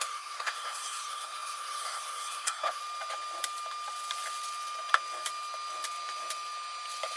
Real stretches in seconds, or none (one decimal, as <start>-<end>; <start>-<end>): 2.8-7.2